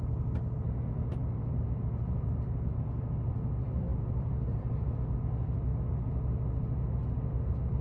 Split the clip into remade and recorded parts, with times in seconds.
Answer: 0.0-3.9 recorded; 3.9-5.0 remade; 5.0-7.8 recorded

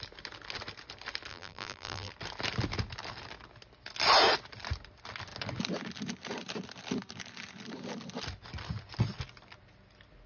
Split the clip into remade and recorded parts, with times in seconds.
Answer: 0.0-1.3 recorded; 1.3-2.1 remade; 2.1-10.3 recorded

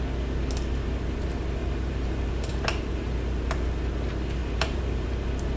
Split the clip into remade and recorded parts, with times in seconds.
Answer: 0.0-1.6 recorded; 1.6-2.5 remade; 2.5-4.4 recorded; 4.4-5.1 remade; 5.1-5.6 recorded

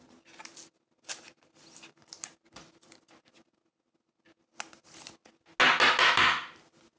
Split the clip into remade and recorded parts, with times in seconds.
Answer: 0.0-7.0 recorded

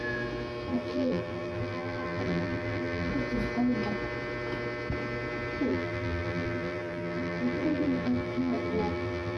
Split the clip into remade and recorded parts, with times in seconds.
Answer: 0.0-0.7 recorded; 0.7-3.1 remade; 3.1-5.7 recorded; 5.7-9.4 remade

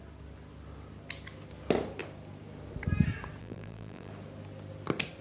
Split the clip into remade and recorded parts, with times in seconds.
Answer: 0.0-3.4 recorded; 3.4-4.1 remade; 4.1-5.2 recorded

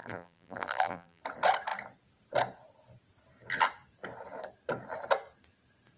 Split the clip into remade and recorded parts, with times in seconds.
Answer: 0.0-1.2 remade; 1.2-6.0 recorded

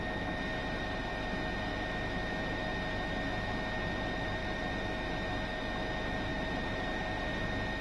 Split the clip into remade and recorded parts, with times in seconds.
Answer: 0.0-0.6 recorded; 0.6-1.1 remade; 1.1-6.3 recorded; 6.3-7.3 remade; 7.3-7.8 recorded